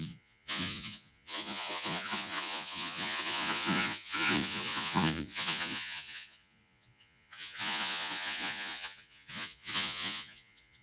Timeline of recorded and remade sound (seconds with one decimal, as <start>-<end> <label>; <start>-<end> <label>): 0.0-10.8 remade